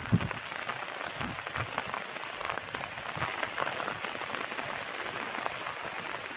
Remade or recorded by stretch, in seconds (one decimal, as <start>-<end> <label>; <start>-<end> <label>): 0.0-6.4 recorded